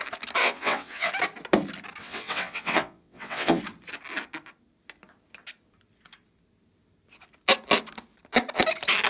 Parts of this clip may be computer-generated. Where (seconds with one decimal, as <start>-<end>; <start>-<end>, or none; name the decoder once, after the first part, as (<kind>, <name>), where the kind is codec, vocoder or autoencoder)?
0.4-1.1 (vocoder, WaveNeXt); 2.0-3.6